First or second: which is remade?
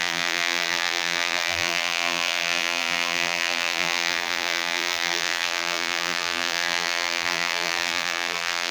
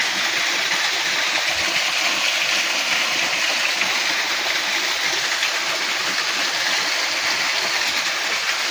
first